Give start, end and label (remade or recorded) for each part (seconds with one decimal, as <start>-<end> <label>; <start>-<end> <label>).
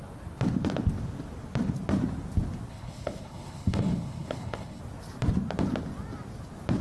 0.0-2.7 recorded; 2.7-4.8 remade; 4.8-6.8 recorded